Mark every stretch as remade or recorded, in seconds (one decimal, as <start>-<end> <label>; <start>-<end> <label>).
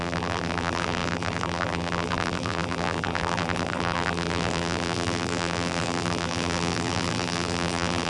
0.0-8.1 remade